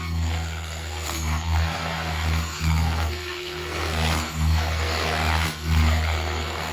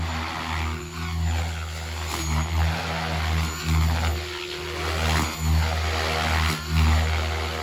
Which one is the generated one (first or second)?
first